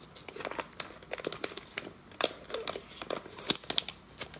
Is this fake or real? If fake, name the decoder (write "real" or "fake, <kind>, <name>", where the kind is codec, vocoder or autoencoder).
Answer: real